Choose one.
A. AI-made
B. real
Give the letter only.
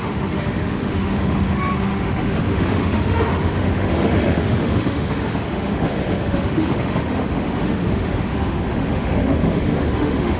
A